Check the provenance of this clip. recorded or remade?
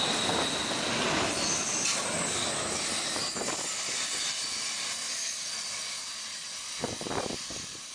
recorded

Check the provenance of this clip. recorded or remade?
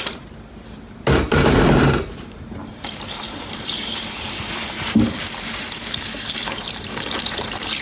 remade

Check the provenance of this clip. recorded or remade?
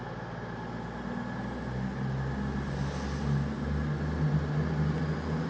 recorded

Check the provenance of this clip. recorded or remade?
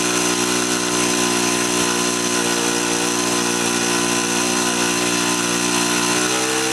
recorded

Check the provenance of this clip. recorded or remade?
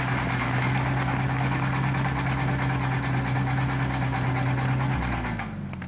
recorded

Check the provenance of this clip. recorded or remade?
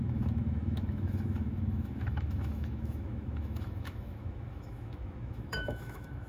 remade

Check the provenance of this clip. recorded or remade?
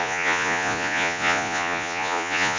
remade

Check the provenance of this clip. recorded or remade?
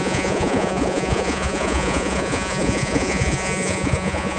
remade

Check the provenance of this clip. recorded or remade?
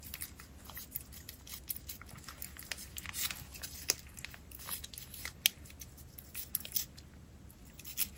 recorded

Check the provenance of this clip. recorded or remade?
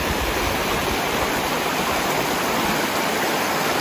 recorded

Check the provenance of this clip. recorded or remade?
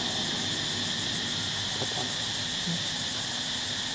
recorded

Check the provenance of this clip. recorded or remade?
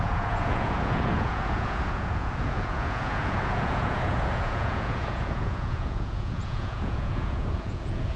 remade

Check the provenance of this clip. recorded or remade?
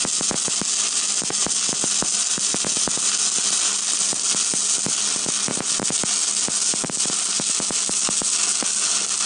recorded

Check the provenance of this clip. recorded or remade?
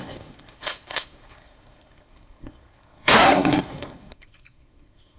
remade